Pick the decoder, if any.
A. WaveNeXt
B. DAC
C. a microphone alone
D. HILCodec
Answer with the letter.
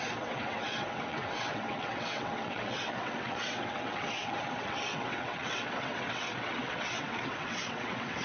A